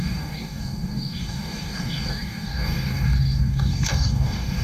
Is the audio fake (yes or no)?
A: yes